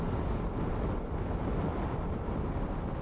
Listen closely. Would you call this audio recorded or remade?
recorded